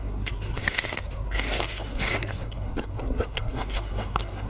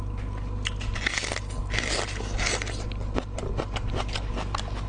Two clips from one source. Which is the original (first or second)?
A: second